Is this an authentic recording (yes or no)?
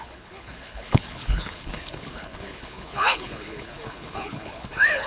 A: no